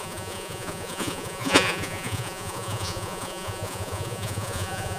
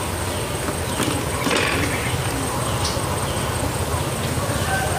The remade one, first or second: first